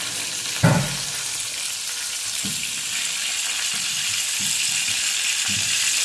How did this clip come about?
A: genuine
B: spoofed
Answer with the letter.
A